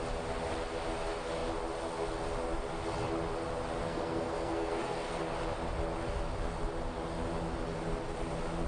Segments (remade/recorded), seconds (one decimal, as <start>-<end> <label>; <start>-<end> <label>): 0.0-3.8 recorded; 3.8-5.2 remade; 5.2-8.7 recorded